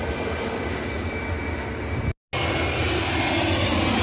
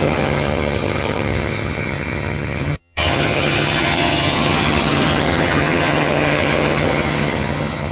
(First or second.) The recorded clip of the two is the first